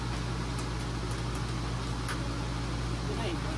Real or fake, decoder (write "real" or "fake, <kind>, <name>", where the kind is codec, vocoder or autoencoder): real